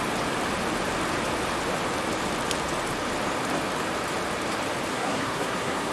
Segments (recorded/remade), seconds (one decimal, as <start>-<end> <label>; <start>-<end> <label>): 0.0-4.9 recorded; 4.9-5.9 remade